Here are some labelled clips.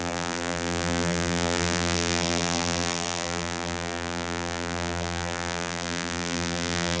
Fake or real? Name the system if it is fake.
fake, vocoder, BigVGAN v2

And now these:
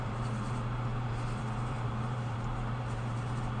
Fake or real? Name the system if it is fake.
fake, vocoder, BigVGAN v2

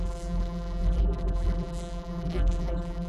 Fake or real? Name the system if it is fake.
fake, vocoder, BigVGAN v2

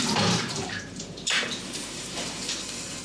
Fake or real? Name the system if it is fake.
fake, vocoder, BigVGAN v2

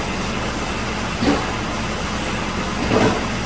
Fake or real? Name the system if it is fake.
real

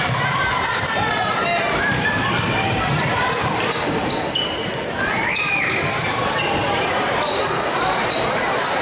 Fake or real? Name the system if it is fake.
fake, vocoder, BigVGAN v2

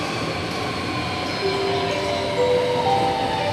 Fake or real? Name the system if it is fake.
real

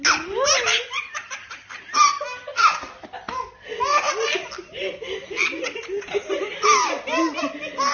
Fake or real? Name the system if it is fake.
real